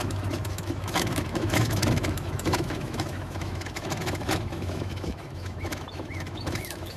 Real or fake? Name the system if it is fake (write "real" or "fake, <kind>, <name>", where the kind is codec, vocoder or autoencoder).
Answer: fake, autoencoder, DAC-VAE